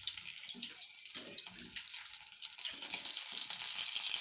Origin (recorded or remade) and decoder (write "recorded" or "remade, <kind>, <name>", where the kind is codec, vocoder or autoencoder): recorded